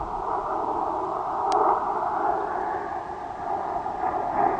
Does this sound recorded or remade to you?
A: remade